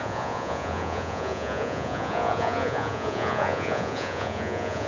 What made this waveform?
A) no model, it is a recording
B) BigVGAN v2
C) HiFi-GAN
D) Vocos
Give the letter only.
D